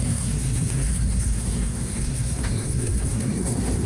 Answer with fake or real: fake